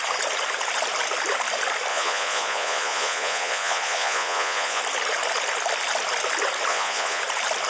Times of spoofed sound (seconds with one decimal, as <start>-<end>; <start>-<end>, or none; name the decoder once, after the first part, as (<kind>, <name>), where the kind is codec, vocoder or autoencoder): 1.9-4.8 (vocoder, Vocos); 6.7-7.2